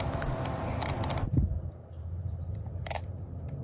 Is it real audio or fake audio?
fake